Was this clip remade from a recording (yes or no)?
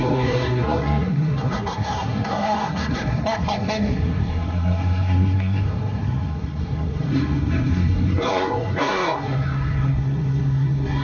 yes